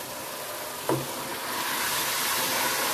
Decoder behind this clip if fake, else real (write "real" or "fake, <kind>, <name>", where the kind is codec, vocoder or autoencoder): real